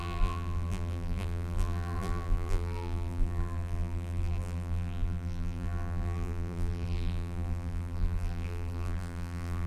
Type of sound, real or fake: fake